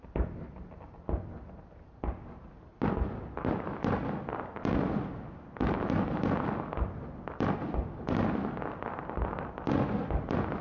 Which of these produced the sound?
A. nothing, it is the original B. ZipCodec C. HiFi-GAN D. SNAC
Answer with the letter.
A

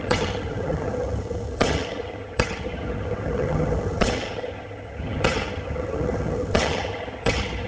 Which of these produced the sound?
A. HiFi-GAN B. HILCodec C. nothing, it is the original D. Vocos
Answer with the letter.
A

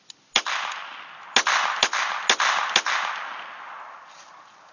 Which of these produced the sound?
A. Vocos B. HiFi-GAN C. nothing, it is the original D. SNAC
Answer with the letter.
C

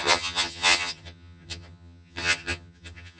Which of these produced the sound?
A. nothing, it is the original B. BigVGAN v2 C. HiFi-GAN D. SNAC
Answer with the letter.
C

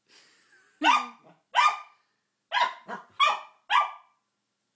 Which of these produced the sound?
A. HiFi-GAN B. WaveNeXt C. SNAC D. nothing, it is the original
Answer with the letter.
D